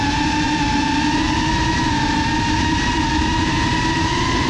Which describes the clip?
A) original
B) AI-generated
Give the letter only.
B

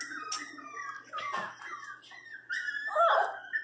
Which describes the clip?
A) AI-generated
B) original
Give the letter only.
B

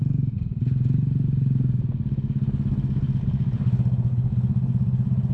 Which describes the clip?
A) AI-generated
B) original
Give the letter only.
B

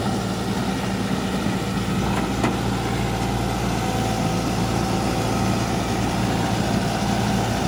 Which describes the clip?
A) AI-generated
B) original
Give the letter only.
B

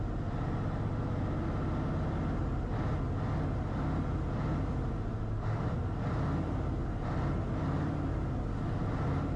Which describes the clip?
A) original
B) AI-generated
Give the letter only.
A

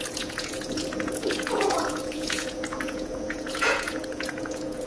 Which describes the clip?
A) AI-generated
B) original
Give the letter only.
A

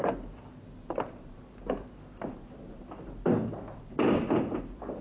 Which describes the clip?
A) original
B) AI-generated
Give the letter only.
A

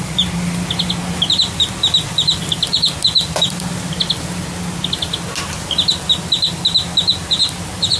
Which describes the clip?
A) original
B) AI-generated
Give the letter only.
A